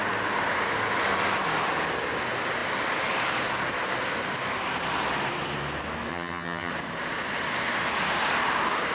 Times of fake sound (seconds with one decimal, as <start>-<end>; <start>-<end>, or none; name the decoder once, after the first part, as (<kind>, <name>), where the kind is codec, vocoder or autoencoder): 6.1-6.7 (vocoder, HiFi-GAN)